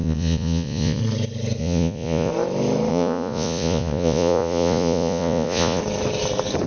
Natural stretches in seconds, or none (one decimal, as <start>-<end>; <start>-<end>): 1.0-1.6; 2.3-2.9; 5.8-6.7